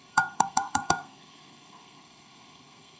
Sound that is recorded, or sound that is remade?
remade